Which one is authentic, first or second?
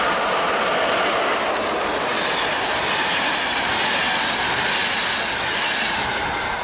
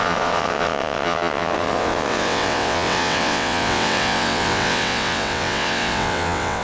first